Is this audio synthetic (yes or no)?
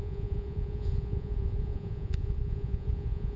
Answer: yes